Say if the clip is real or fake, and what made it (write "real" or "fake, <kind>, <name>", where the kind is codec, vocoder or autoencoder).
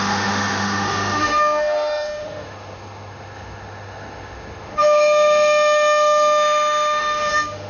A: fake, autoencoder, DAC-VAE